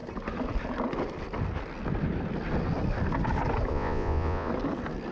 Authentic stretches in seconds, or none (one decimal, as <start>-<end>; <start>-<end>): 0.0-3.7; 4.5-5.1